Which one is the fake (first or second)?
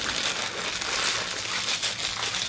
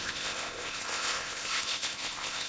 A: second